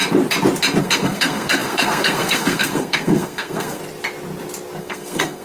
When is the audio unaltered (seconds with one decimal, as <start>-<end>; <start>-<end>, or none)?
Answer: 0.0-0.8; 3.8-4.8